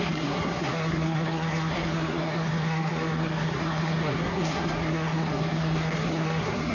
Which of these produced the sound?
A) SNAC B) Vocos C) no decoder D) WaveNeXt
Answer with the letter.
A